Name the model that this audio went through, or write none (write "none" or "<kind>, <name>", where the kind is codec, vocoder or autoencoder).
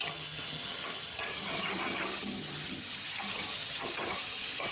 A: vocoder, HiFi-GAN